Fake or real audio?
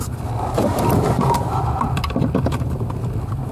real